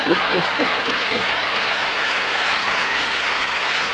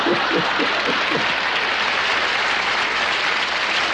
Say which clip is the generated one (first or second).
first